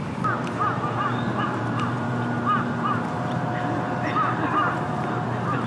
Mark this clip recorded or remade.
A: remade